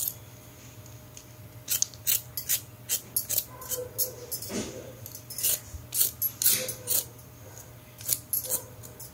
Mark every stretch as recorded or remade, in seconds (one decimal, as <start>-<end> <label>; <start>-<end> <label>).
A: 0.0-9.1 recorded